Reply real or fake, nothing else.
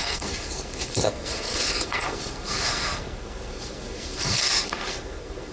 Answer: fake